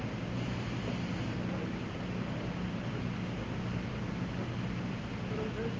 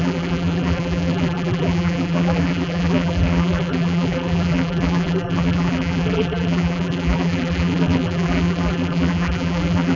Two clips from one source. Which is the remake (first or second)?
second